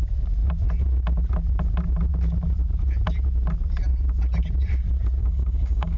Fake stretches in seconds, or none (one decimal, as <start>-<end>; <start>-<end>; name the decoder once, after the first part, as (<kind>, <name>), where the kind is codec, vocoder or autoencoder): 5.2-6.0 (codec, DAC)